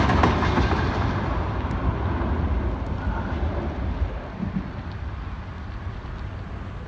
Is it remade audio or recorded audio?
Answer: recorded